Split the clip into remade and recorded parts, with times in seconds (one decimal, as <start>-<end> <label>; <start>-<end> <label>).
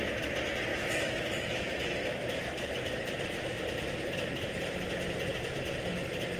0.0-0.7 recorded; 0.7-3.1 remade; 3.1-6.4 recorded